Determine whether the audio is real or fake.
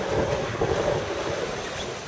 real